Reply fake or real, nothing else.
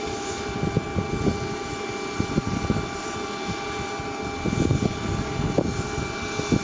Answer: real